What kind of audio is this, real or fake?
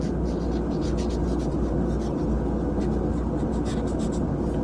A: real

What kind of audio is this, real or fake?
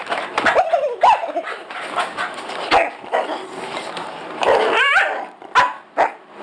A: real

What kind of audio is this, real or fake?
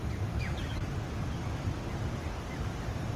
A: real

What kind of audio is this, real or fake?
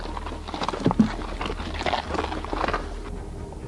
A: real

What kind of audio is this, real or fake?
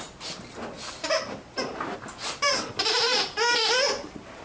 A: real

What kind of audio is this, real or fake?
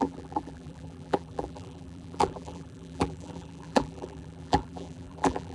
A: fake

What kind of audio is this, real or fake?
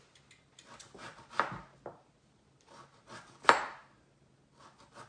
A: real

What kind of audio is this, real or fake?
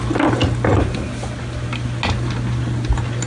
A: real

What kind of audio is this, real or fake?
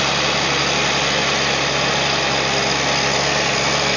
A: real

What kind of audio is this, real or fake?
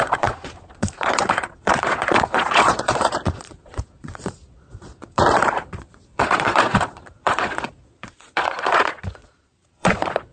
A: fake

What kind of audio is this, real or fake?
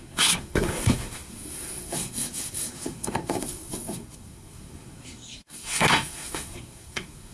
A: fake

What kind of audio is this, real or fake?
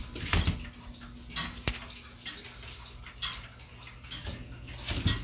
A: real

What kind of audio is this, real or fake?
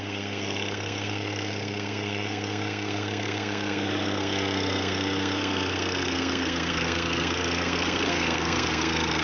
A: fake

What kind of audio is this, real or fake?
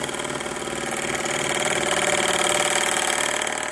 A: real